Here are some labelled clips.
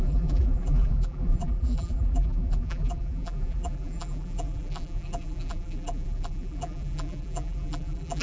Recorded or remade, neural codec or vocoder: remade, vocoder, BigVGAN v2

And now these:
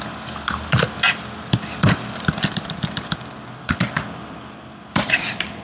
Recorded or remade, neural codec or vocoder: remade, vocoder, BigVGAN v2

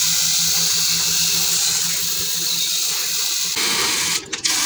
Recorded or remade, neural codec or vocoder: recorded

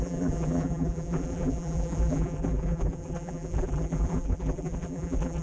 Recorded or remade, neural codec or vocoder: remade, vocoder, BigVGAN v2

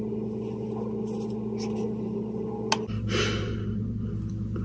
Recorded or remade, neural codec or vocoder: recorded